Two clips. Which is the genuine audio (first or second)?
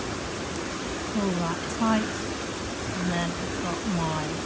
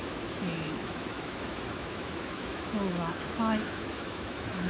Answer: first